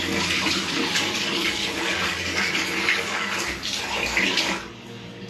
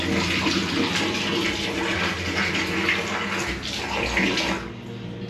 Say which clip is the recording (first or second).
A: second